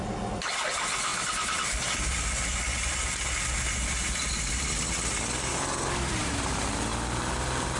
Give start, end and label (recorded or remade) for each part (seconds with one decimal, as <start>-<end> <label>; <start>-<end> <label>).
0.0-7.8 recorded